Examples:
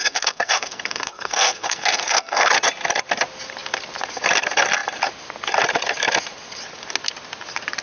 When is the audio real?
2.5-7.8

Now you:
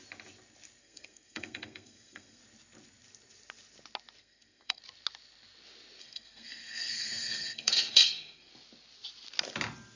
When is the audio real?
0.0-0.8; 2.4-4.2; 4.8-6.0; 8.5-10.0

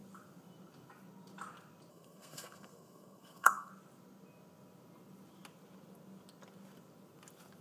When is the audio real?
0.0-1.9; 3.7-7.6

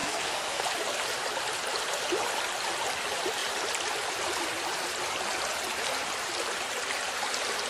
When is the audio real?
0.6-7.7

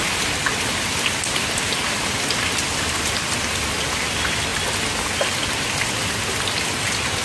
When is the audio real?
0.0-7.2

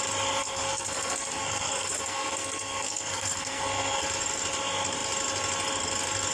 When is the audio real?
0.0-0.4; 4.0-6.3